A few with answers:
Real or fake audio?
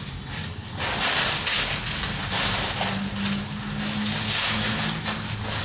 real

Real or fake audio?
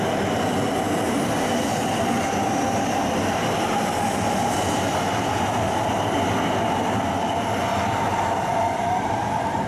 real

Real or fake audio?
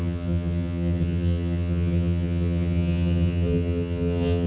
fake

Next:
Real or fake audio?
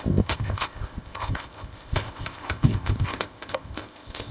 fake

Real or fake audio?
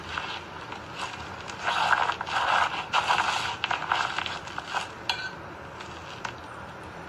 real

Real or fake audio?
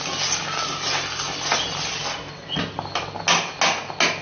real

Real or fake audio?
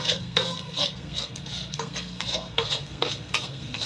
fake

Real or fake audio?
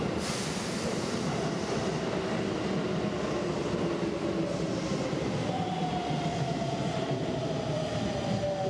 real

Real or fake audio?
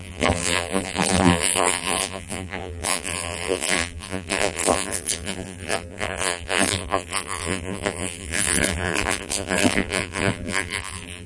fake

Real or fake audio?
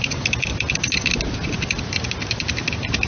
real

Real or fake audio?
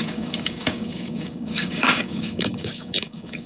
fake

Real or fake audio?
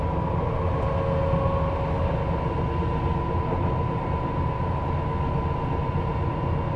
real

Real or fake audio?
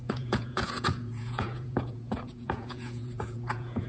fake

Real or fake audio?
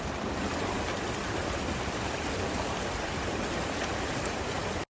fake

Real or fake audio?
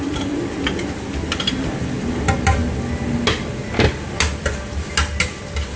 real